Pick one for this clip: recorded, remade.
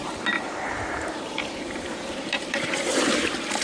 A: remade